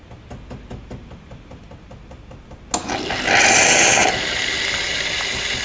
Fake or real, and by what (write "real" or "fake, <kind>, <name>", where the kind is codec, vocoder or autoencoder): real